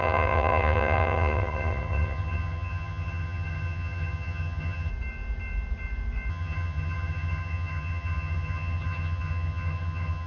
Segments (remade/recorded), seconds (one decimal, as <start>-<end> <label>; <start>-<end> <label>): 0.0-4.9 remade; 4.9-6.3 recorded; 6.3-10.3 remade